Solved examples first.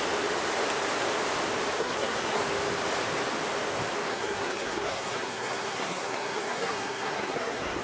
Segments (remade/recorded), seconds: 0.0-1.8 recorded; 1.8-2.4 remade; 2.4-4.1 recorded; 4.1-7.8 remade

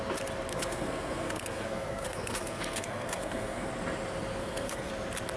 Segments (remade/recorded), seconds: 0.0-0.5 recorded; 0.5-3.7 remade; 3.7-4.4 recorded; 4.4-4.9 remade; 4.9-5.4 recorded

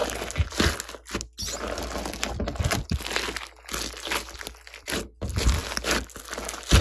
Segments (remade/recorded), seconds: 0.0-6.8 recorded

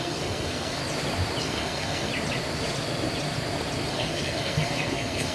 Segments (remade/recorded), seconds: 0.0-0.8 remade; 0.8-1.4 recorded; 1.4-2.1 remade; 2.1-3.9 recorded; 3.9-5.3 remade

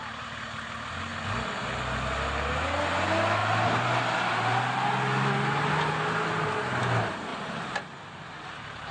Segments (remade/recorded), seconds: 0.0-1.1 recorded; 1.1-1.6 remade; 1.6-7.3 recorded; 7.3-8.9 remade

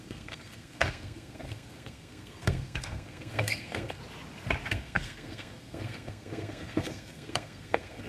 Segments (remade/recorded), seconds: 0.0-4.0 remade; 4.0-4.7 recorded; 4.7-8.1 remade

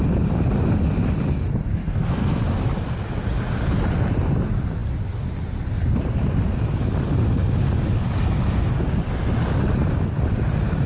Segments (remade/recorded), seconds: 0.0-1.8 recorded; 1.8-2.4 remade; 2.4-10.9 recorded

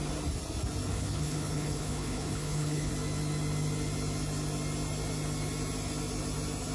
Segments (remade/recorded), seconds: 0.0-0.9 recorded; 0.9-2.9 remade; 2.9-6.7 recorded